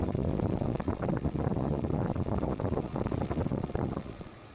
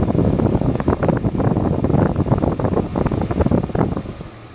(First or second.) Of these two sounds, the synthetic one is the first